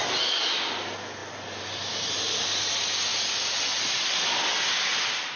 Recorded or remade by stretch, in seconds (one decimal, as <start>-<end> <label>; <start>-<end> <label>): 0.0-5.4 recorded